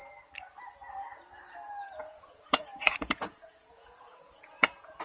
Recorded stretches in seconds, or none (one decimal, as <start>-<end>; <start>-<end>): 0.0-2.0

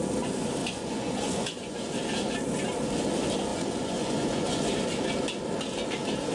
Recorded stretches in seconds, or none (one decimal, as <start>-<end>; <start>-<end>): 0.0-0.6; 1.9-3.5; 4.7-6.3

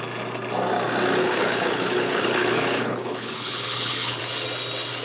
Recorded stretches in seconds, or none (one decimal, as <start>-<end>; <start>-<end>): 0.0-1.2; 4.2-5.0

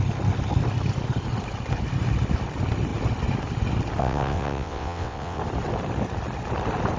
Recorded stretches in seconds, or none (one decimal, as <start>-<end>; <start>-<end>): 0.0-4.0; 5.4-7.0

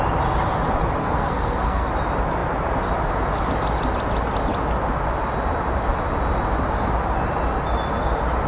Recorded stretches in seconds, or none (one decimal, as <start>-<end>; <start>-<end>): 0.0-1.0; 1.9-8.5

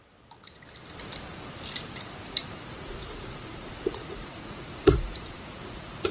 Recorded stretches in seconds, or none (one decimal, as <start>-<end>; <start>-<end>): 0.0-2.4

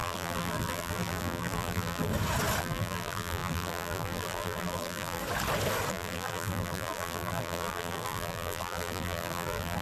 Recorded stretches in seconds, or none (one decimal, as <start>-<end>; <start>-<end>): 2.1-2.6; 5.2-5.9